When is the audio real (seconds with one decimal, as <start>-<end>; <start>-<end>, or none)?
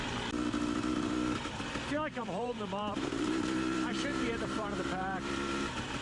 0.0-0.9; 1.6-2.2